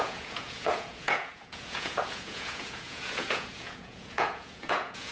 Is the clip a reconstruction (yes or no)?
yes